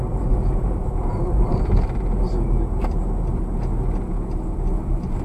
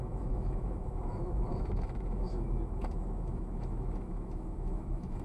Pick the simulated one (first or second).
second